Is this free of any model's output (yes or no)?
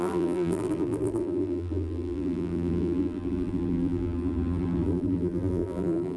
no